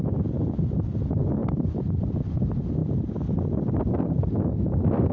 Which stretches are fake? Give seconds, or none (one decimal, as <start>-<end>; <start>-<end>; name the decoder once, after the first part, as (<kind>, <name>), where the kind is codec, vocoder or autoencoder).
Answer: 1.4-2.4 (vocoder, BigVGAN v2); 2.8-4.2